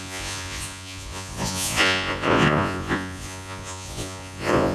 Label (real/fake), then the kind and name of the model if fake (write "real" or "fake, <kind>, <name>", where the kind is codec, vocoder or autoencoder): fake, vocoder, Vocos